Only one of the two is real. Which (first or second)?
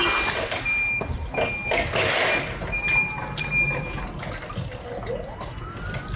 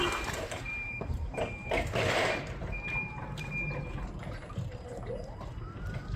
first